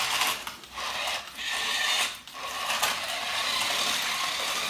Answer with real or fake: real